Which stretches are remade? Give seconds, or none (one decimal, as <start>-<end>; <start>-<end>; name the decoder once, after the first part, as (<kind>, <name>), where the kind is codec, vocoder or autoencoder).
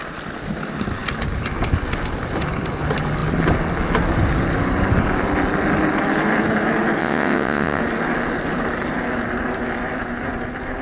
7.0-7.8 (vocoder, WaveNeXt)